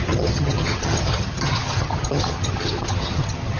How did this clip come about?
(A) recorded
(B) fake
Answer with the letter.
B